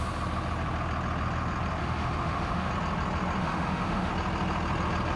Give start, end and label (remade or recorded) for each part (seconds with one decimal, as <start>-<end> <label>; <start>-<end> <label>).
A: 0.0-1.8 recorded; 1.8-2.7 remade; 2.7-3.4 recorded; 3.4-4.1 remade; 4.1-5.2 recorded